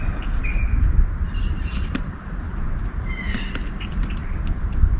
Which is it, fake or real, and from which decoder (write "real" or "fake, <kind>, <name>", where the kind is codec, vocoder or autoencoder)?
fake, vocoder, BigVGAN v2